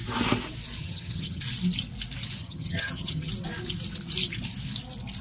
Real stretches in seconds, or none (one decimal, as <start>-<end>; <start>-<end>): 0.0-0.8; 1.4-2.4; 3.3-5.2